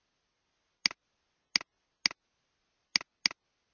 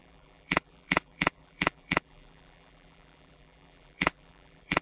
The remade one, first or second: second